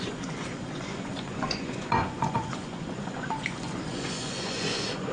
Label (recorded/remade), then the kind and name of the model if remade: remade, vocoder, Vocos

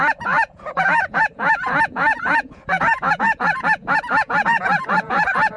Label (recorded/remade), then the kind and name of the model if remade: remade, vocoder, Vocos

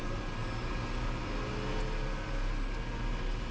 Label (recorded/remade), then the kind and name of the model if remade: recorded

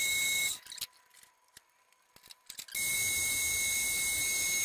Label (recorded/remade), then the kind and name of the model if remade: recorded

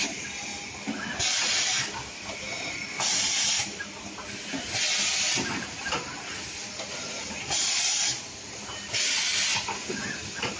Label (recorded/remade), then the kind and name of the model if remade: recorded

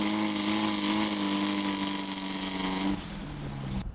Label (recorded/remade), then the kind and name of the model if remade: recorded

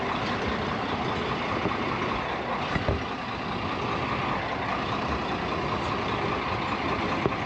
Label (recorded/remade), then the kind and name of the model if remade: recorded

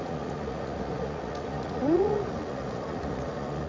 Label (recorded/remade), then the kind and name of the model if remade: remade, vocoder, Vocos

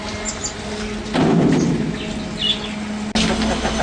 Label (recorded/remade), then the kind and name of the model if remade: recorded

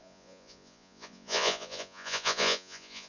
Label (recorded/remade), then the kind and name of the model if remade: remade, vocoder, Vocos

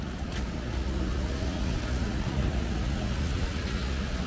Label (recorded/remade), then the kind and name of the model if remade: remade, vocoder, Vocos